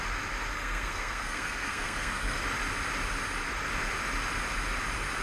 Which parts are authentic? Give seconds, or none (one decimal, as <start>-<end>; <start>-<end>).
0.0-0.5; 2.4-5.2